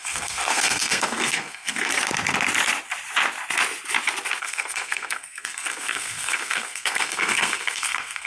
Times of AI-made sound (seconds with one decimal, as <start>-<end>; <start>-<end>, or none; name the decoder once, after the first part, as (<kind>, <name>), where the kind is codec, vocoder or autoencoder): 0.0-1.9 (codec, SNAC); 4.4-8.3